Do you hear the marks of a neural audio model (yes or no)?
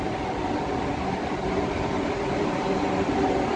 no